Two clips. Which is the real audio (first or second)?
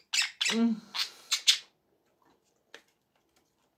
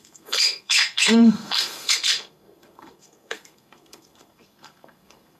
first